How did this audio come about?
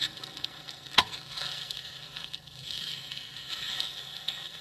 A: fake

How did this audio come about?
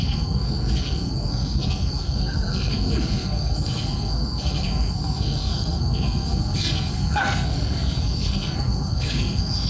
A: fake